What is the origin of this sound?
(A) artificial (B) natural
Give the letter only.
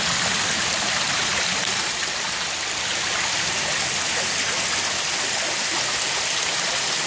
B